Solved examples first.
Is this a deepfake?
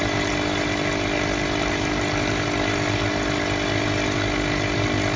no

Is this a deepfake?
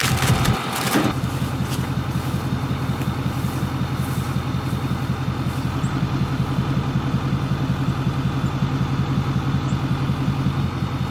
no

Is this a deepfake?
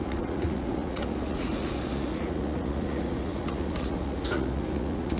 yes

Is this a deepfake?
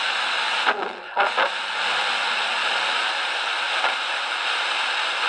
no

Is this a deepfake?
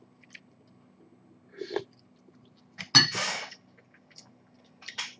no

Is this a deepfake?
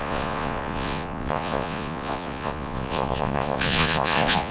yes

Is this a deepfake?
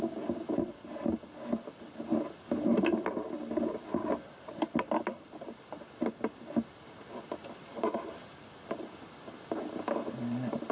no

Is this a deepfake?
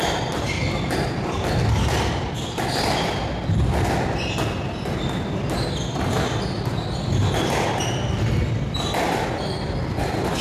no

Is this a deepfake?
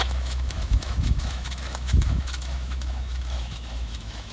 yes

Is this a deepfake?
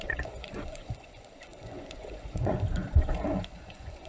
yes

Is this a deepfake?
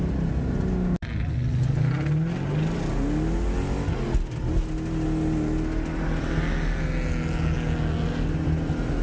no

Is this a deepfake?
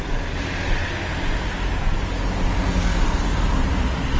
no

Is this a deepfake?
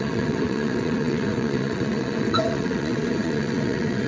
yes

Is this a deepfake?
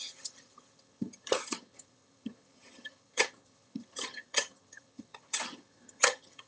yes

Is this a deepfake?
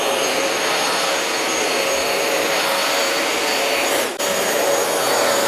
no